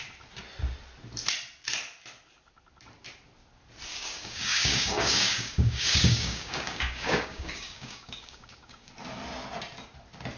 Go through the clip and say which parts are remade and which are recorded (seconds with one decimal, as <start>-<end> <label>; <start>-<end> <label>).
0.0-3.9 recorded; 3.9-8.9 remade; 8.9-10.4 recorded